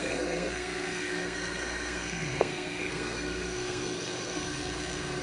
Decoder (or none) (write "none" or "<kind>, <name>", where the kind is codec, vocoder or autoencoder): codec, SNAC